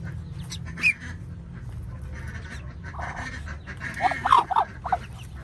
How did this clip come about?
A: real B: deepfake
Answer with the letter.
A